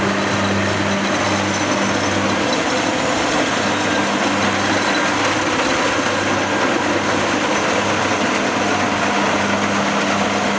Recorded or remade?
recorded